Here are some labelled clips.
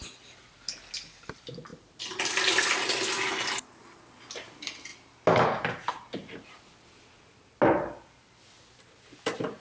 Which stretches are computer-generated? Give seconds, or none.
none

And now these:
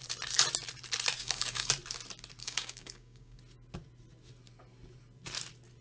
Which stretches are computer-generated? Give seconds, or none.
1.2-1.7; 2.4-3.4

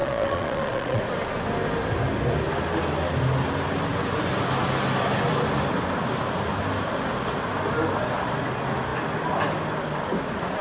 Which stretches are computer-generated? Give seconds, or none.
0.0-1.0

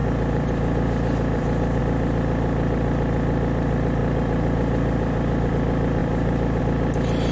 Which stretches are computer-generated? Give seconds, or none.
0.0-1.8; 4.0-5.5; 6.0-6.6

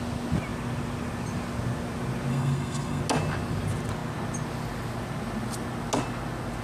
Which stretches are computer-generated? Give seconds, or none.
2.3-3.0